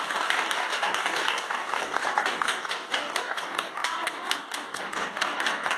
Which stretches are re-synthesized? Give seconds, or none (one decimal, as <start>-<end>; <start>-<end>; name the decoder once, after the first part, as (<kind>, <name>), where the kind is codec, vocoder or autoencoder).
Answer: 0.0-5.8 (codec, DAC)